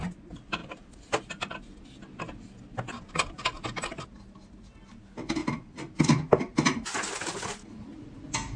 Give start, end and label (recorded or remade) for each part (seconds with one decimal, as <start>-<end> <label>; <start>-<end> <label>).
0.0-5.4 recorded; 5.4-5.9 remade; 5.9-8.6 recorded